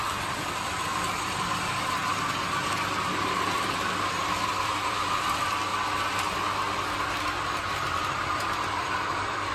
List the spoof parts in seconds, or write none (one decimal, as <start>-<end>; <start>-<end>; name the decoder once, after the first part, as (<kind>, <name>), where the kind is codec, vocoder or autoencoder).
0.0-2.0 (vocoder, BigVGAN v2); 3.2-5.7; 8.0-9.5